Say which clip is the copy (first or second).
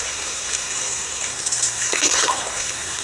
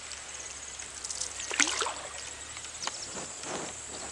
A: first